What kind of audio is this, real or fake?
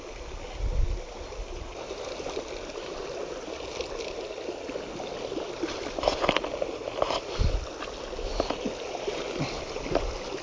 real